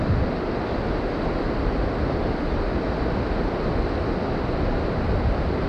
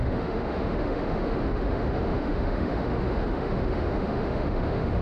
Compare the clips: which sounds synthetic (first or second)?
second